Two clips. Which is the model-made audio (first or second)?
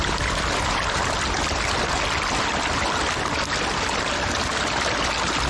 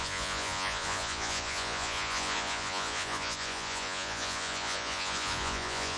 second